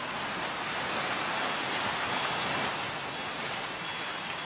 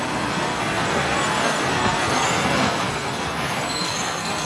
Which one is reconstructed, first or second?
second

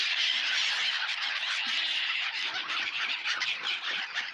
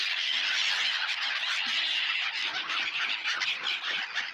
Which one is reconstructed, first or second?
first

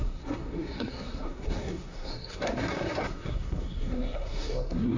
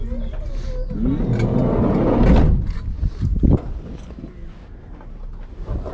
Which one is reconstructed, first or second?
first